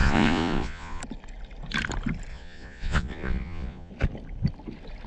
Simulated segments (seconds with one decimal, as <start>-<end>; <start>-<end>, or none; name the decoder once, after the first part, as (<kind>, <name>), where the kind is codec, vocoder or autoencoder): 0.0-1.0 (vocoder, Vocos); 2.3-3.9